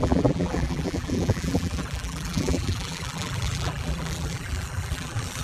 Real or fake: fake